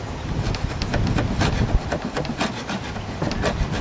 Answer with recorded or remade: recorded